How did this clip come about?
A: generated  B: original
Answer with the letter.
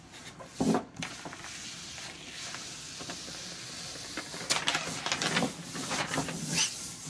B